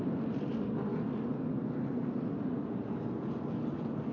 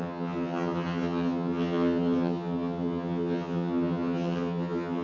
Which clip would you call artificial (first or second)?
second